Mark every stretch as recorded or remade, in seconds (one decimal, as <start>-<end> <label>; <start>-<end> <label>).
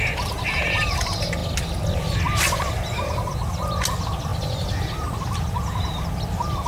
0.0-6.7 recorded